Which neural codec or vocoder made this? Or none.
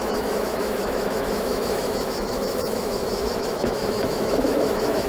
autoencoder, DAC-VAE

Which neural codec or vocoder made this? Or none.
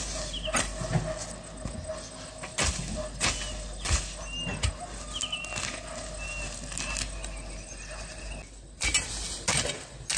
none